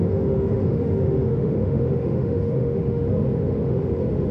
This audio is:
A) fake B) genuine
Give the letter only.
A